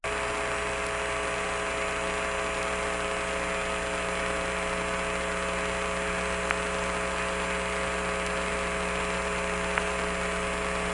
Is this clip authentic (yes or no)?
yes